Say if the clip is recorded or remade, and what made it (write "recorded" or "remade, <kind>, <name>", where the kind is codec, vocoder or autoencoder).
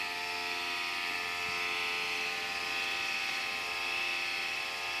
recorded